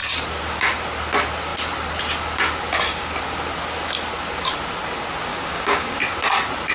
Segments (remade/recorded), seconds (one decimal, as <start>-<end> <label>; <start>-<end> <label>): 0.0-5.3 recorded; 5.3-6.0 remade; 6.0-6.7 recorded